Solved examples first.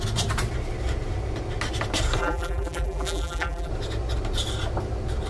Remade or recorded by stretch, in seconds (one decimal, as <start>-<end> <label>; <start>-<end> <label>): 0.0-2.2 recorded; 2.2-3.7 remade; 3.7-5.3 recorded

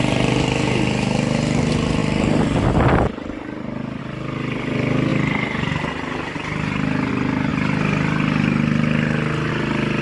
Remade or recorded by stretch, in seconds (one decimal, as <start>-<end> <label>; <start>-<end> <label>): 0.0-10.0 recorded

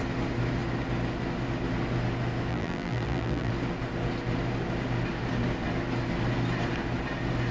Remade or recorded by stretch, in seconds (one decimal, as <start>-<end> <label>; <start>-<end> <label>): 0.0-2.5 recorded; 2.5-3.5 remade; 3.5-7.5 recorded

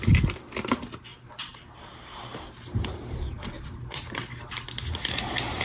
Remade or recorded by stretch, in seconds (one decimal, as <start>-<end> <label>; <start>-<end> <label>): 0.0-1.1 recorded; 1.1-4.3 remade; 4.3-5.6 recorded

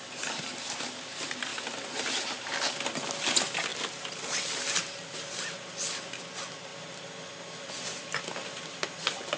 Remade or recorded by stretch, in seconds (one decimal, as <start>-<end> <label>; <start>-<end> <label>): 0.0-3.7 recorded; 3.7-4.7 remade; 4.7-9.4 recorded

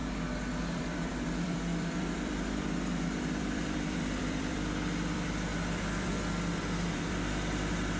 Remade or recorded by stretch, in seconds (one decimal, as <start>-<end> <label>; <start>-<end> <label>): 0.0-0.6 recorded; 0.6-8.0 remade

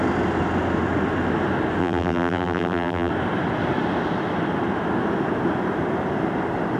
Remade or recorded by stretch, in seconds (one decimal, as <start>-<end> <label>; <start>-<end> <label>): 0.0-1.8 recorded; 1.8-3.1 remade; 3.1-6.8 recorded

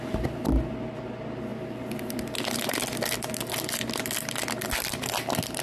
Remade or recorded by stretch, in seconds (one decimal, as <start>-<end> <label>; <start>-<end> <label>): 0.0-5.6 recorded